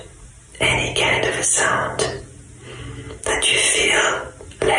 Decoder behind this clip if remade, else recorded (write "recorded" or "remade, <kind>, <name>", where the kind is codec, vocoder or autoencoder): recorded